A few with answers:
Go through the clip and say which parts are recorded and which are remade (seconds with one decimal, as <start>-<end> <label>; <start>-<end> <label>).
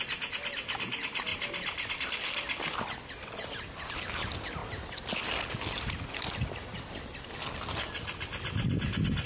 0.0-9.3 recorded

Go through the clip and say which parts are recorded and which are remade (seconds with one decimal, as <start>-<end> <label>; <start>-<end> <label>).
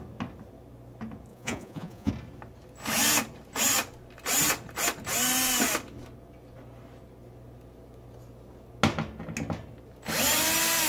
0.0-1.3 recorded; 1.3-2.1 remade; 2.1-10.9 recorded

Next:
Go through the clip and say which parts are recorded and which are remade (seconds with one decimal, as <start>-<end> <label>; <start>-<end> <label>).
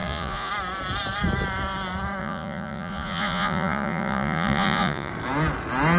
0.0-0.5 remade; 0.5-2.2 recorded; 2.2-5.1 remade; 5.1-6.0 recorded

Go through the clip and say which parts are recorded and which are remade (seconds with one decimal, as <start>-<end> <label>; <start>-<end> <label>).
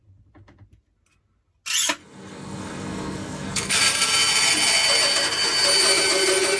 0.0-2.0 recorded; 2.0-3.8 remade; 3.8-6.6 recorded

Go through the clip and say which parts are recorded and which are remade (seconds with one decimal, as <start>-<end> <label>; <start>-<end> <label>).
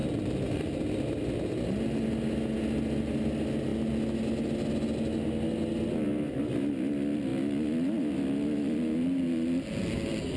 0.0-10.4 recorded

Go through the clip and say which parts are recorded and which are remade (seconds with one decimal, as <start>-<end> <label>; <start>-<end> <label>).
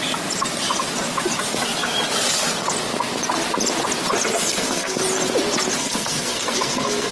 0.0-4.4 recorded; 4.4-5.0 remade; 5.0-5.8 recorded; 5.8-7.1 remade